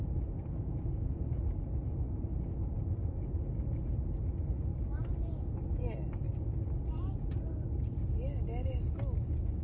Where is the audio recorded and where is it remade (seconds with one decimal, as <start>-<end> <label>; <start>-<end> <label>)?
0.0-4.7 recorded; 4.7-5.3 remade; 5.3-9.6 recorded